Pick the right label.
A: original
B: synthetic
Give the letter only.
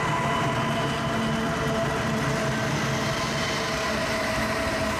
A